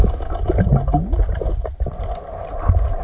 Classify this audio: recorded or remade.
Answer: recorded